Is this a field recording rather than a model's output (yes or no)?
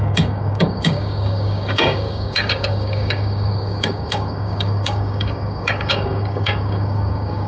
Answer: no